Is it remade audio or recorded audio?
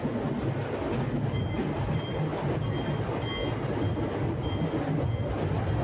recorded